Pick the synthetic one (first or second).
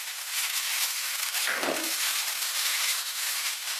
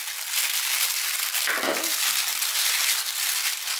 first